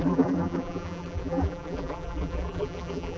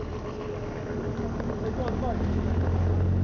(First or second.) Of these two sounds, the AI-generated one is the first